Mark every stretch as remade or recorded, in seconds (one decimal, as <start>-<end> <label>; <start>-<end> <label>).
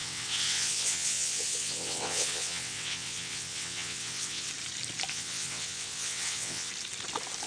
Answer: 0.0-4.5 remade; 4.5-5.1 recorded; 5.1-6.7 remade; 6.7-7.5 recorded